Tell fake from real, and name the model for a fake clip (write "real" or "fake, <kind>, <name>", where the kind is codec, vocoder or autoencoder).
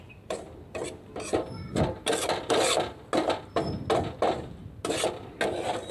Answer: real